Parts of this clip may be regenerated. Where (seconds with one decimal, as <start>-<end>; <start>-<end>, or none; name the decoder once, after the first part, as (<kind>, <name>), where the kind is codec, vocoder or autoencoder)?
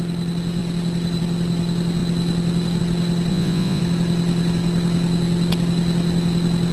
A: 3.3-3.8 (vocoder, Vocos)